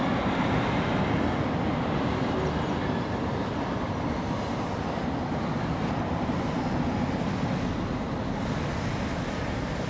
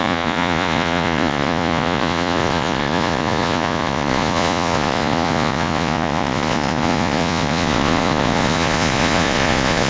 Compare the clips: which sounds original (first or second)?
first